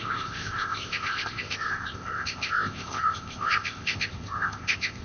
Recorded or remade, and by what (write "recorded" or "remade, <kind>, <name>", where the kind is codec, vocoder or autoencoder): remade, codec, ZipCodec